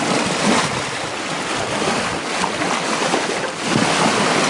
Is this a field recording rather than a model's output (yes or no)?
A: yes